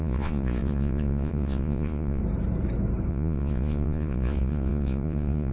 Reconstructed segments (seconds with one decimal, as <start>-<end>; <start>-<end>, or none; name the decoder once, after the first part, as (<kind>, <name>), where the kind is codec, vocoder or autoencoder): 0.0-2.2 (vocoder, Vocos); 3.1-5.5